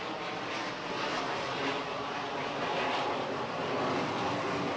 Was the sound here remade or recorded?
recorded